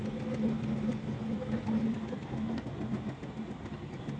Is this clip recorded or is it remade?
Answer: recorded